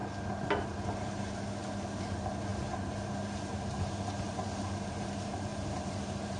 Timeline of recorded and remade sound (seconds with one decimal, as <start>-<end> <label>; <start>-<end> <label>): 0.0-2.5 recorded; 2.5-4.6 remade; 4.6-5.5 recorded; 5.5-6.4 remade